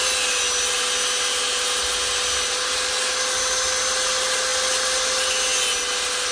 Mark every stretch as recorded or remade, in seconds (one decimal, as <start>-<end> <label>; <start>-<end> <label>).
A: 0.0-6.3 recorded